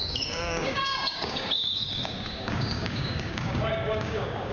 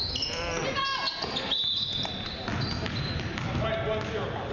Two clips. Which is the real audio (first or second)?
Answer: second